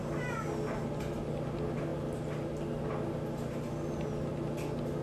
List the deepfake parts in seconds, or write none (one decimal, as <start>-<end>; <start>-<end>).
none